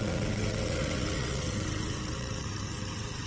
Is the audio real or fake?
fake